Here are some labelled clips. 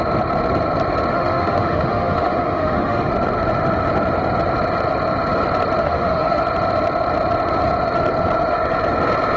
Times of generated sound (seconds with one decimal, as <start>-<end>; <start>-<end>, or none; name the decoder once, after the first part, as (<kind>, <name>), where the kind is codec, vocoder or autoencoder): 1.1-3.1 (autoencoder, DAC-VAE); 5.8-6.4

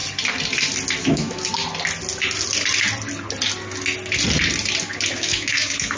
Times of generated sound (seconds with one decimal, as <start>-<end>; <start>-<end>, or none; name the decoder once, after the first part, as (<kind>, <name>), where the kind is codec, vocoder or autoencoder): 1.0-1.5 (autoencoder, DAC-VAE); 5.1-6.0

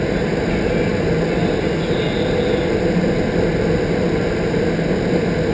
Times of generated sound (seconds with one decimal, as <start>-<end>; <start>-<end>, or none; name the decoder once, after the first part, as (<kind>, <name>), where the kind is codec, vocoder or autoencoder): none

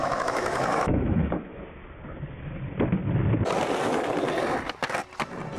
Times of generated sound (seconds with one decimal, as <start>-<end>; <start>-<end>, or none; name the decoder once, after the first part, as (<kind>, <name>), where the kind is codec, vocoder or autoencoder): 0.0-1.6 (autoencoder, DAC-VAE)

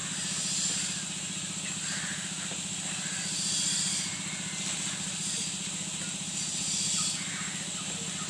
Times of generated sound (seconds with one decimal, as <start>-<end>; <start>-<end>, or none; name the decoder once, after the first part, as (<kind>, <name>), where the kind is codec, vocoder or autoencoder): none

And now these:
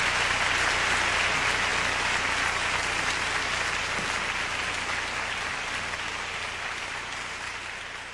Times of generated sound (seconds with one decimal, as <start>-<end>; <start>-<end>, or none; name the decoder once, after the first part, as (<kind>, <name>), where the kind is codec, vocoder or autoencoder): none

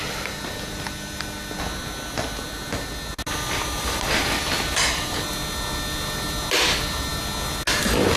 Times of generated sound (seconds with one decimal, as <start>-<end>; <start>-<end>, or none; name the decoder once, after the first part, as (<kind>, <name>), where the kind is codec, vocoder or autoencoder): none

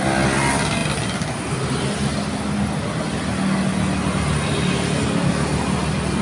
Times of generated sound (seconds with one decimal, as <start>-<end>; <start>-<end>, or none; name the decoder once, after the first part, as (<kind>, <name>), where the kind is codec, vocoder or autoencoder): none